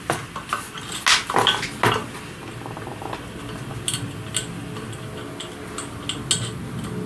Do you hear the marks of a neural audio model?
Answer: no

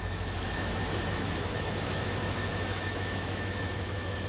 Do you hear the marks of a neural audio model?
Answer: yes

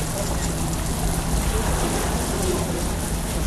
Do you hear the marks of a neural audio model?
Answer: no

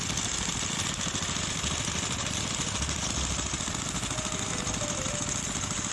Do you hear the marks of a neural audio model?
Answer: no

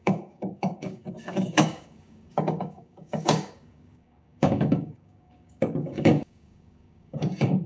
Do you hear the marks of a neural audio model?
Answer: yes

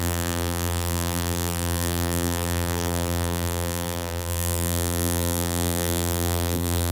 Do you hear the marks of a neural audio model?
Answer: yes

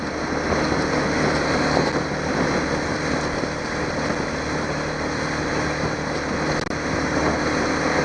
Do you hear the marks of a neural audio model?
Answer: no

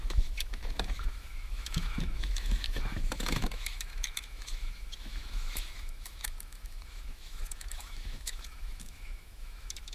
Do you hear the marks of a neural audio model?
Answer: yes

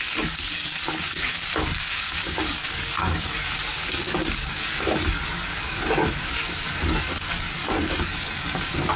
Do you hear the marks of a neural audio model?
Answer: yes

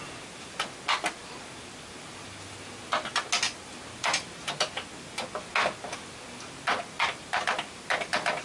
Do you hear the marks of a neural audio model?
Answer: no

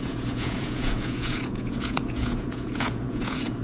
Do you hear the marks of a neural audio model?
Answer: yes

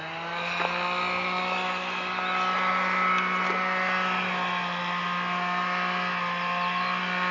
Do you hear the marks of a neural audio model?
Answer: no